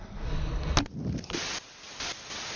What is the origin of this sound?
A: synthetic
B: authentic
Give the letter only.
B